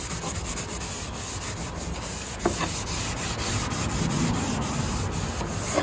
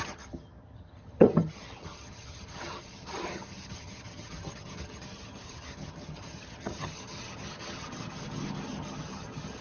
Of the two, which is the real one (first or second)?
first